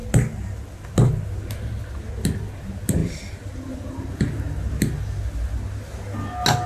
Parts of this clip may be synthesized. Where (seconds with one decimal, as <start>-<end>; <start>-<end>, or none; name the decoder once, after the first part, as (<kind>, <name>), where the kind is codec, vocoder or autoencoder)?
none